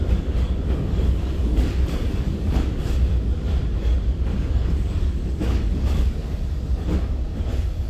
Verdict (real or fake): fake